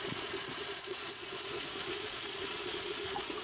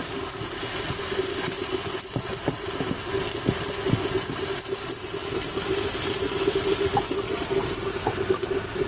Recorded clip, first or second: second